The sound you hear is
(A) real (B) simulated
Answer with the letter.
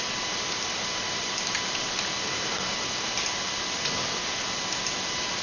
B